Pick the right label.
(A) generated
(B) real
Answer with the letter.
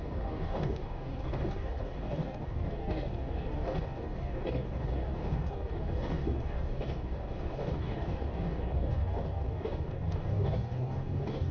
A